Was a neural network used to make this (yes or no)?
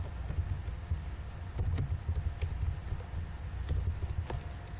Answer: no